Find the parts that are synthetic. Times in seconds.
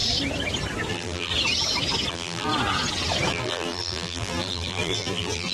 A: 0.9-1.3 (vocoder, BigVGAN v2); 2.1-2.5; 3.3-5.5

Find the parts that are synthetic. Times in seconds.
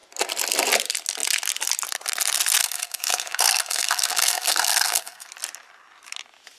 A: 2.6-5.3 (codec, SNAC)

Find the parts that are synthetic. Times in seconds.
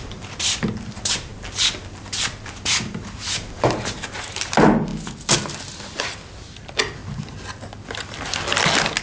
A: none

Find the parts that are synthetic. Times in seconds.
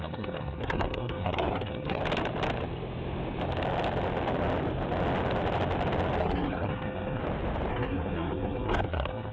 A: 0.0-2.0 (codec, SNAC); 6.2-7.2; 7.7-9.3